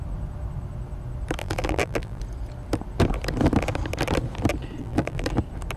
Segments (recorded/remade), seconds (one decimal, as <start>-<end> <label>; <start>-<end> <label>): 0.0-1.4 recorded; 1.4-2.2 remade; 2.2-4.8 recorded; 4.8-5.3 remade; 5.3-5.8 recorded